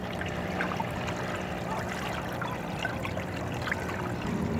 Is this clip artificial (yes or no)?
no